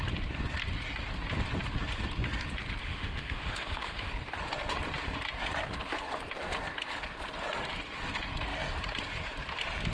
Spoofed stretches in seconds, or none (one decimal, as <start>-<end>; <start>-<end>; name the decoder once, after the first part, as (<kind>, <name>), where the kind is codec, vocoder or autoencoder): 2.8-4.1 (autoencoder, DAC-VAE)